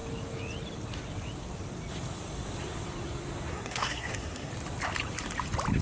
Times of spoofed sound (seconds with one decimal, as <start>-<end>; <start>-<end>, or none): 3.5-4.5